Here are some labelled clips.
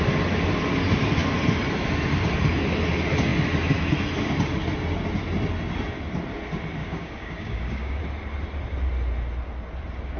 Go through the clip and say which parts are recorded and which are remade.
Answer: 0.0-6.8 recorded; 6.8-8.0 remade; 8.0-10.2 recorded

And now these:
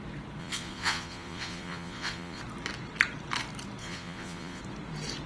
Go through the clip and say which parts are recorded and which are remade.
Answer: 0.0-0.4 recorded; 0.4-2.4 remade; 2.4-3.8 recorded; 3.8-4.6 remade; 4.6-5.3 recorded

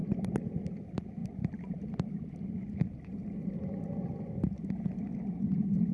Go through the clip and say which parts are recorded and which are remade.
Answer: 0.0-0.6 remade; 0.6-1.2 recorded; 1.2-4.7 remade; 4.7-5.9 recorded